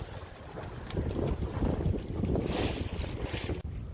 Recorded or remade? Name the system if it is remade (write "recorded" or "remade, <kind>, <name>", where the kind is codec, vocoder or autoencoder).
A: recorded